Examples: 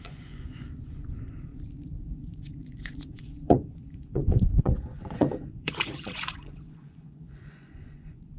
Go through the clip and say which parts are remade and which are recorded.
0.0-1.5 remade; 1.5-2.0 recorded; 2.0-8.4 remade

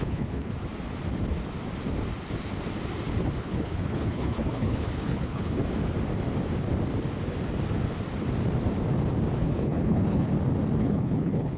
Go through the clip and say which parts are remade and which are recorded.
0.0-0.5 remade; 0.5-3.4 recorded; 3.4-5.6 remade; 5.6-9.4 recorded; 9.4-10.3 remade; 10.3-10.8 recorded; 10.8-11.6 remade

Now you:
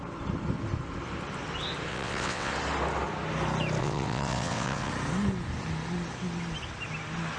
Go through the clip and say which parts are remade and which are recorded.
0.0-1.9 recorded; 1.9-2.5 remade; 2.5-3.8 recorded; 3.8-4.9 remade; 4.9-7.4 recorded

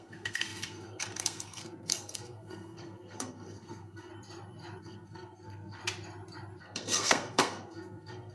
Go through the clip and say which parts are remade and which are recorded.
0.0-4.1 remade; 4.1-4.8 recorded; 4.8-5.8 remade; 5.8-6.6 recorded; 6.6-8.3 remade

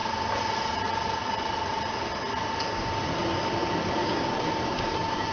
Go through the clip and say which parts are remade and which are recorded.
0.0-4.0 recorded; 4.0-5.3 remade

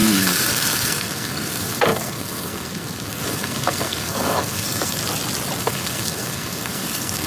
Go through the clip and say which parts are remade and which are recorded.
0.0-5.0 remade; 5.0-5.6 recorded; 5.6-7.3 remade

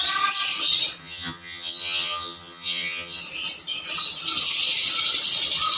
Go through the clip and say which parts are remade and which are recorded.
0.0-1.0 recorded; 1.0-3.2 remade; 3.2-5.8 recorded